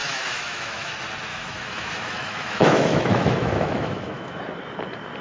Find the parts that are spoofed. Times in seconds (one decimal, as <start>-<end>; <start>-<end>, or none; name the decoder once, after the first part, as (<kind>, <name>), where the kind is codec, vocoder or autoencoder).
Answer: 0.0-0.9 (autoencoder, DAC-VAE); 1.3-4.4